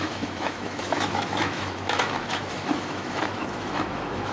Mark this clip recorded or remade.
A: remade